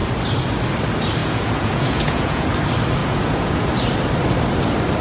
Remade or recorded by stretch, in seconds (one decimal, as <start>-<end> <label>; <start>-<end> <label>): 0.0-1.2 recorded; 1.2-2.5 remade; 2.5-3.0 recorded; 3.0-3.7 remade; 3.7-5.0 recorded